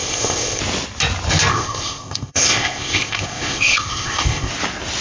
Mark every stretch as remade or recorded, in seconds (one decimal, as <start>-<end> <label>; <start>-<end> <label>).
0.0-0.6 remade; 0.6-1.5 recorded; 1.5-4.5 remade; 4.5-5.0 recorded